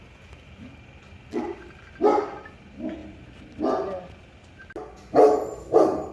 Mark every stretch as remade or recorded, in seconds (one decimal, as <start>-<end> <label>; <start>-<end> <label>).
0.0-6.1 recorded